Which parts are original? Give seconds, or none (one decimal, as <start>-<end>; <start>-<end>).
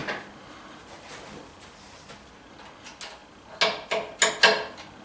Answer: 0.0-5.0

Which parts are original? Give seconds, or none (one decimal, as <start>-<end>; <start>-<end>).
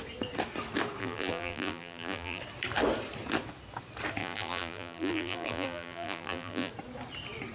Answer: 0.0-1.0; 2.4-4.2; 6.7-7.5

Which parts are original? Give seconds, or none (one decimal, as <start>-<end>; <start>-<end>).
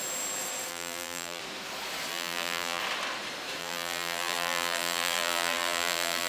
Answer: 0.0-0.7; 1.4-2.1; 2.8-3.6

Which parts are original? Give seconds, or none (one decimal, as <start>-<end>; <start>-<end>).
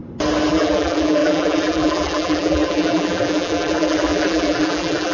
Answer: 0.0-0.5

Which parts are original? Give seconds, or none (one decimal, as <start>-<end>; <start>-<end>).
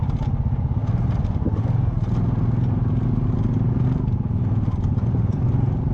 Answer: 0.8-4.3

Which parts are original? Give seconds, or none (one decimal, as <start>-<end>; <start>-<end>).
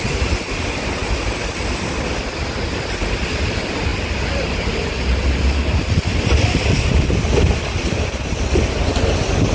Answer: 0.0-9.5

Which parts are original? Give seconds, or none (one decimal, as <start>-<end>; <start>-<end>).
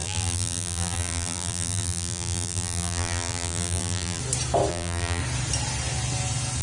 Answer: 4.2-4.7; 5.2-6.6